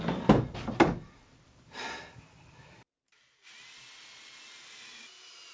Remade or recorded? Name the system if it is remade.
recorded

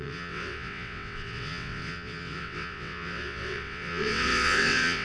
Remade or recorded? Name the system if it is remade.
remade, vocoder, WaveNeXt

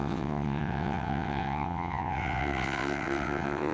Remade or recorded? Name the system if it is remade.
remade, vocoder, WaveNeXt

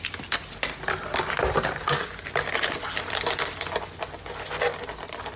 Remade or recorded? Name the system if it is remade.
recorded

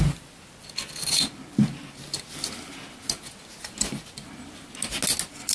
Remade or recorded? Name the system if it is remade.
recorded